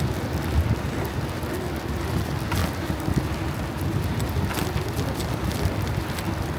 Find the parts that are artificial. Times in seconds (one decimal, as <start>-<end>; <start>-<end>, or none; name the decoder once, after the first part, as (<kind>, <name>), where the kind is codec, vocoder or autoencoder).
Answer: 5.2-5.9 (vocoder, BigVGAN v2)